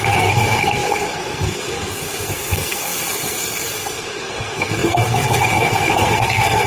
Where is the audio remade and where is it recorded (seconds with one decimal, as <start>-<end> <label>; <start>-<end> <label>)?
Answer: 0.0-6.7 remade